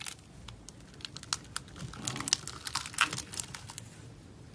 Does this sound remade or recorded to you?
recorded